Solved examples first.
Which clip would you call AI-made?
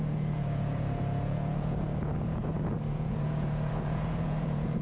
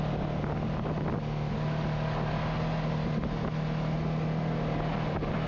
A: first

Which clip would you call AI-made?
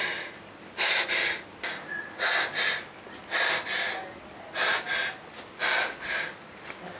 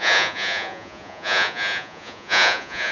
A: second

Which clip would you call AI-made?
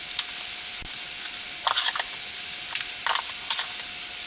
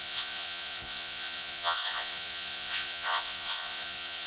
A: second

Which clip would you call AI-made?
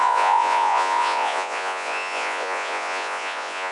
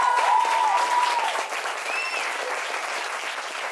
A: first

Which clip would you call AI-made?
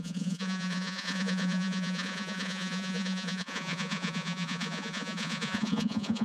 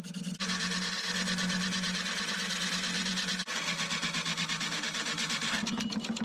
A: first